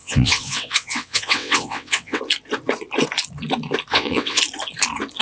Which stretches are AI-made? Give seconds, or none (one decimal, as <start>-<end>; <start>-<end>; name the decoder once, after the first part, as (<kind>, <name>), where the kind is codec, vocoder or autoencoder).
0.0-2.2 (vocoder, WaveNeXt); 3.9-4.4